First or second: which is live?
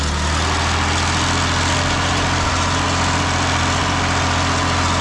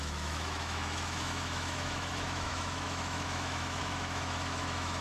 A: first